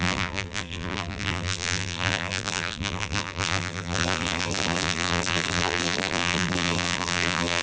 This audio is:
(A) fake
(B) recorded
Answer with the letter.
A